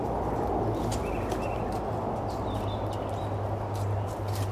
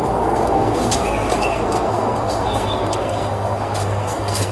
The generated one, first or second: second